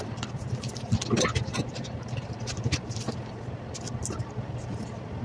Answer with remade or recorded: remade